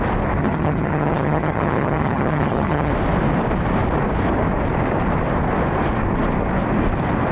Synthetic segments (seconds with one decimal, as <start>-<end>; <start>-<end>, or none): 0.4-2.9